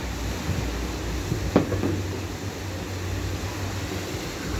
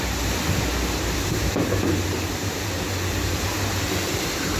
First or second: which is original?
first